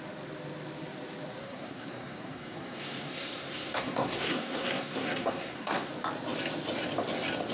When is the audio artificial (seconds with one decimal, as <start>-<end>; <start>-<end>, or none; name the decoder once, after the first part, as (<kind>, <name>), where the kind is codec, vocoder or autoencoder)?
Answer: 1.4-5.9 (codec, SNAC)